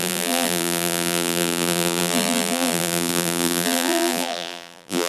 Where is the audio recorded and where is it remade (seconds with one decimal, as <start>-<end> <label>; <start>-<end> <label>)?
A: 0.0-5.1 remade